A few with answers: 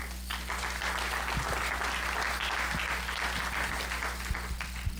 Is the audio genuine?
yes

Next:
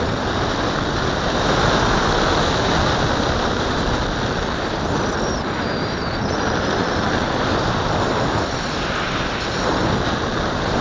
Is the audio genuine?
yes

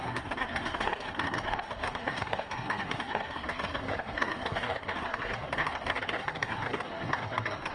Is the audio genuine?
no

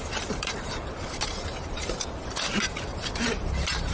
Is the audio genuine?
no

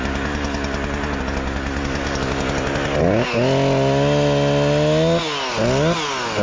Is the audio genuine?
yes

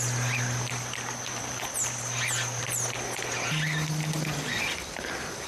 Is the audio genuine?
yes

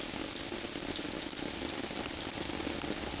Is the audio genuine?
yes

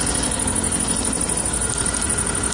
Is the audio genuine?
yes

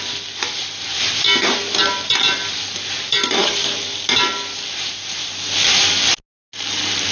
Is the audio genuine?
yes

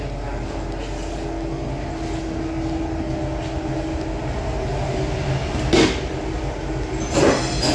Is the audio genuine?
yes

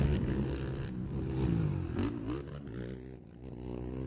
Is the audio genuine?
yes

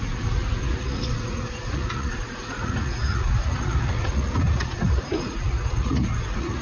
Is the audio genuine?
no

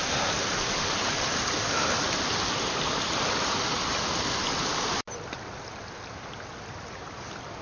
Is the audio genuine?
yes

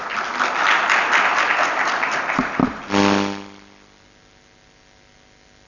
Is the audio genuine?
yes